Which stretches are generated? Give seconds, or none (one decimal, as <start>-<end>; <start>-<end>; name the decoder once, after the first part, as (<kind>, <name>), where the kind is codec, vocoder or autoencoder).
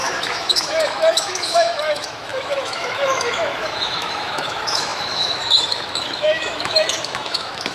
0.0-7.7 (autoencoder, DAC-VAE)